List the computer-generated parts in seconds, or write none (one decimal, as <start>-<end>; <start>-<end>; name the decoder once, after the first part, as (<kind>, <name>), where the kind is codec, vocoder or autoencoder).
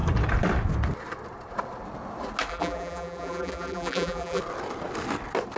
2.5-4.4 (vocoder, BigVGAN v2)